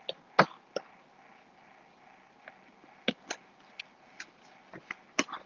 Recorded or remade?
recorded